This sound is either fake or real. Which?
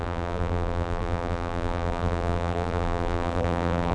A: fake